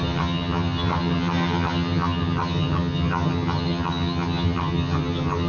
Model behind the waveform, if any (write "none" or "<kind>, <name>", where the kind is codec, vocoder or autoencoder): vocoder, HiFi-GAN